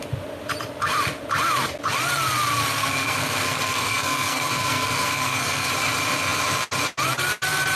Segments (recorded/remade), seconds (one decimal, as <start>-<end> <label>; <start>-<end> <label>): 0.0-2.8 recorded; 2.8-5.7 remade; 5.7-7.8 recorded